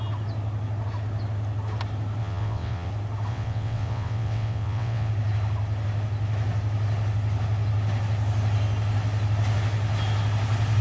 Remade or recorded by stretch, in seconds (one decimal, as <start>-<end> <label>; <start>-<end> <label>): 0.0-2.2 recorded; 2.2-2.9 remade; 2.9-3.3 recorded; 3.3-5.1 remade; 5.1-10.8 recorded